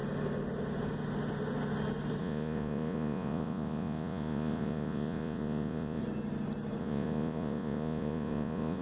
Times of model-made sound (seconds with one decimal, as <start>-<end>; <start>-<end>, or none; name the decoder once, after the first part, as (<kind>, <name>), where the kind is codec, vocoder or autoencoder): 2.2-6.0 (vocoder, Vocos); 6.8-8.8